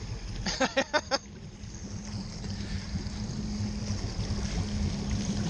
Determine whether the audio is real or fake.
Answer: real